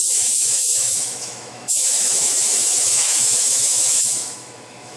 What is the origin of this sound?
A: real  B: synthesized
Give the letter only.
B